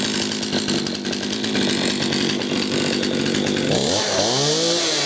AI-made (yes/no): no